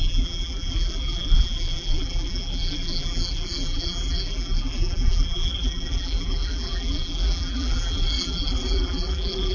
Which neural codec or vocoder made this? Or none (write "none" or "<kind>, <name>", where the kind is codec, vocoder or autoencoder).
vocoder, BigVGAN v2